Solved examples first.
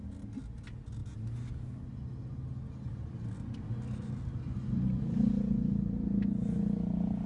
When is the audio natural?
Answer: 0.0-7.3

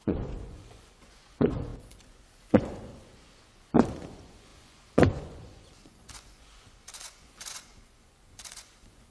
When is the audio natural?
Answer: none

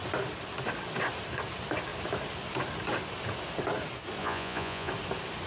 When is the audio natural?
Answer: 0.0-4.2; 4.9-5.5